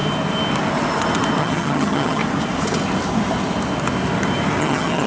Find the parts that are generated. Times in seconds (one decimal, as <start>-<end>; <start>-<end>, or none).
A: 1.4-2.2; 4.6-5.1